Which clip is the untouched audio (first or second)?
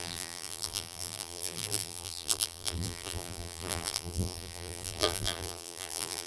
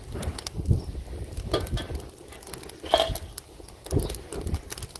second